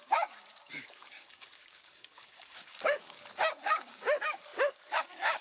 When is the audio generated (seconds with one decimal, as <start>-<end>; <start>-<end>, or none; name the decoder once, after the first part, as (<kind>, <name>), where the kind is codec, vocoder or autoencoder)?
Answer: 0.0-5.4 (codec, DAC)